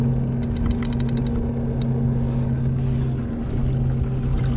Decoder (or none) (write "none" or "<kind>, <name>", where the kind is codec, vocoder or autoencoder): none